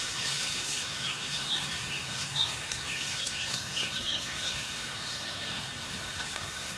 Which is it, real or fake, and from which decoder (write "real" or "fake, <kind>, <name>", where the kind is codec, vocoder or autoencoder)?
fake, codec, SNAC